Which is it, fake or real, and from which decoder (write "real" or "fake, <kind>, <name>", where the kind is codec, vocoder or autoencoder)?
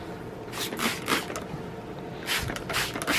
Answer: real